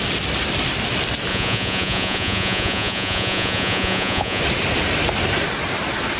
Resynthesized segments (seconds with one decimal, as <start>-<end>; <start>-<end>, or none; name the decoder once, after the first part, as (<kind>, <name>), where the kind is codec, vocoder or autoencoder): 1.3-4.4 (vocoder, Vocos)